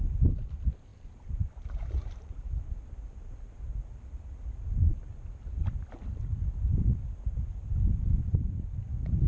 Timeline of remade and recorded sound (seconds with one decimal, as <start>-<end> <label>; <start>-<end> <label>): 0.0-0.9 recorded; 0.9-2.5 remade; 2.5-9.3 recorded